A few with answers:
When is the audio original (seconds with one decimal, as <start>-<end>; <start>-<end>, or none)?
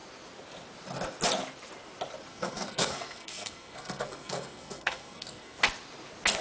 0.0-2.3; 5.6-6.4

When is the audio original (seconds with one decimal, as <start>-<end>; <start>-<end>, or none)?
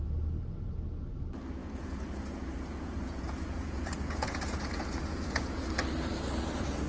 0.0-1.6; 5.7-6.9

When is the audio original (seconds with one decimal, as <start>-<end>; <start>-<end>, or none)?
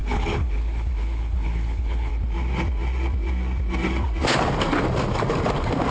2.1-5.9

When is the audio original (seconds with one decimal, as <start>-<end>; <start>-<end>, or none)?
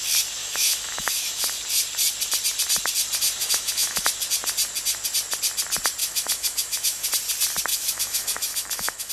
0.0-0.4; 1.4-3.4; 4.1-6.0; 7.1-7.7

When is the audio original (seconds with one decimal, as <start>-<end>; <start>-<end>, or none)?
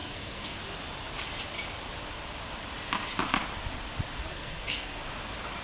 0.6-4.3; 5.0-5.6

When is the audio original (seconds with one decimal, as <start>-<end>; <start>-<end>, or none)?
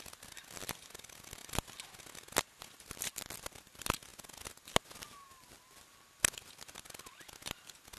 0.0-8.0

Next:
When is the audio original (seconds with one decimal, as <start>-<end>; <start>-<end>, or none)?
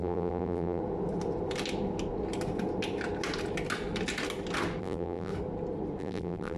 0.8-4.8; 5.3-6.0